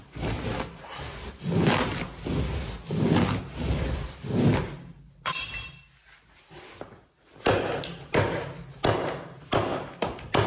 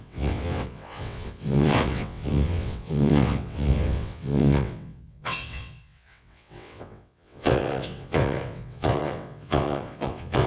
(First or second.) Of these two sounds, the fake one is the second